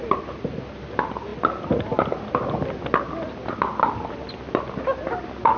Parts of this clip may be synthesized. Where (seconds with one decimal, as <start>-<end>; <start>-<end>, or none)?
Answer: none